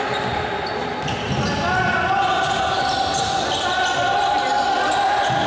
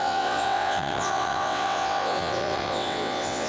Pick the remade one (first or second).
second